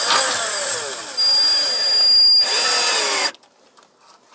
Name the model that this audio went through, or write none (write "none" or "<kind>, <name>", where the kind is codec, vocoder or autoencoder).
none